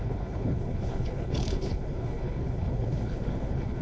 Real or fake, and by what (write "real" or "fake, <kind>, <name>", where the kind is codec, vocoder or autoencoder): fake, codec, HILCodec